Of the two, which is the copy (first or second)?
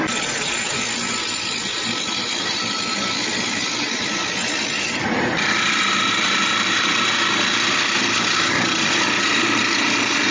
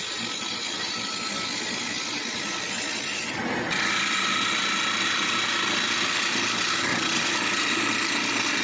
first